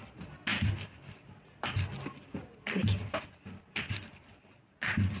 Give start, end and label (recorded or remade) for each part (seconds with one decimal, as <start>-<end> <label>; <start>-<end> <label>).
0.0-5.2 recorded